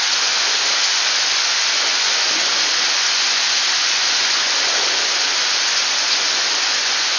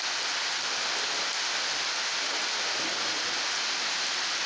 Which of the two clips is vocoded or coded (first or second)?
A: first